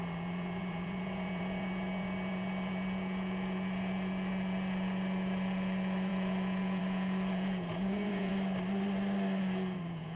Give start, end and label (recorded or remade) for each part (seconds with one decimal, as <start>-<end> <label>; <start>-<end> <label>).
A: 0.0-8.3 remade; 8.3-9.4 recorded; 9.4-10.2 remade